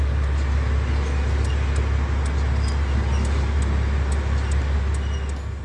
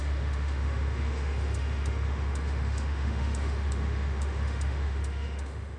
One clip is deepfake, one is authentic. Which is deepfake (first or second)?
second